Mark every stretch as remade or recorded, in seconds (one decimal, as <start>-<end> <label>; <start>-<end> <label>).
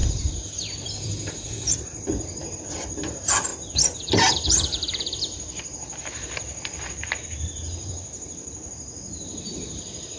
0.0-3.5 remade; 3.5-4.3 recorded; 4.3-10.2 remade